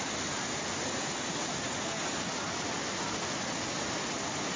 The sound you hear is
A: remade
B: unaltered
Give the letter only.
B